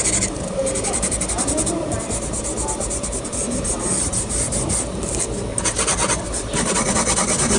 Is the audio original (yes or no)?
yes